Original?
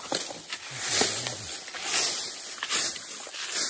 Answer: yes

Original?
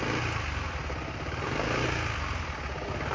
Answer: yes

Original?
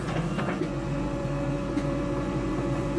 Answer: no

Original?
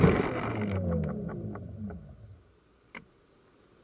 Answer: yes